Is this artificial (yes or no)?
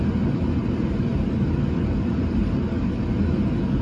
no